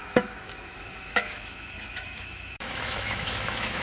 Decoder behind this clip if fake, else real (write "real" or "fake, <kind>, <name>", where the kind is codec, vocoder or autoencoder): fake, autoencoder, DAC-VAE